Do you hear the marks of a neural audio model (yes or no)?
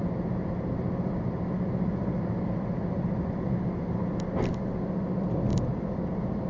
no